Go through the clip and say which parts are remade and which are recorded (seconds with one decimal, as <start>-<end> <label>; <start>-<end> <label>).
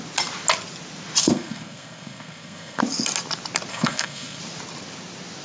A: 0.0-1.2 recorded; 1.2-2.8 remade; 2.8-3.7 recorded; 3.7-4.4 remade; 4.4-5.4 recorded